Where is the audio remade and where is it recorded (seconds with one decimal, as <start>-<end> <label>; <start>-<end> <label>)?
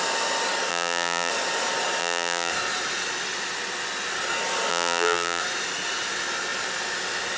0.0-0.7 recorded; 0.7-1.3 remade; 1.3-2.0 recorded; 2.0-2.5 remade; 2.5-4.7 recorded; 4.7-5.4 remade; 5.4-7.4 recorded